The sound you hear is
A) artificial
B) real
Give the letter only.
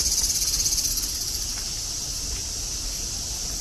B